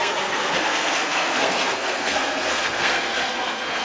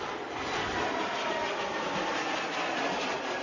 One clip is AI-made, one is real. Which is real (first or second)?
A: second